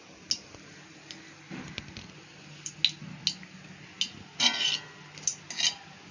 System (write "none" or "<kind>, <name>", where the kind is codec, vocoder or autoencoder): none